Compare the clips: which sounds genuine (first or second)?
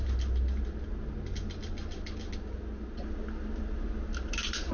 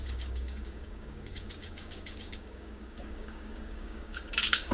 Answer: first